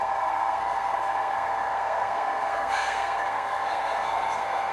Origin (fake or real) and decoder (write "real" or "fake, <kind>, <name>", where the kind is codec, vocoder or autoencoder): fake, codec, SNAC